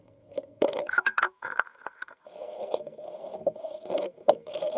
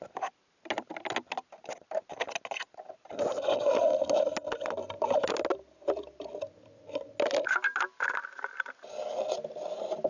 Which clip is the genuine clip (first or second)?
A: second